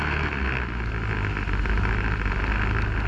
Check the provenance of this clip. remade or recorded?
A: recorded